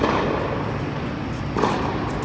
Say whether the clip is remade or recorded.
recorded